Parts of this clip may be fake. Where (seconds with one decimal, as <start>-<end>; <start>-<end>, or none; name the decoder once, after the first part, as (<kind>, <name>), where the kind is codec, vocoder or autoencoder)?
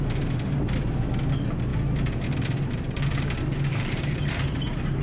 3.7-5.0 (vocoder, BigVGAN v2)